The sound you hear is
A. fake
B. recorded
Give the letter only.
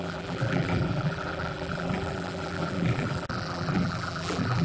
A